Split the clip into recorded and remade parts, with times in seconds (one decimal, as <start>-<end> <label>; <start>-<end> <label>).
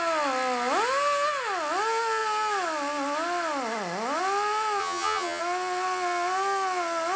0.0-4.8 recorded; 4.8-5.4 remade; 5.4-7.2 recorded